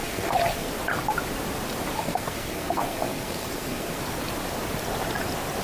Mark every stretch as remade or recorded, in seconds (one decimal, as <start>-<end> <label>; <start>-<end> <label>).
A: 0.0-0.7 remade; 0.7-1.9 recorded; 1.9-4.0 remade; 4.0-5.6 recorded